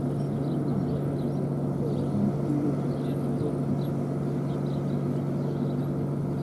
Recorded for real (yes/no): yes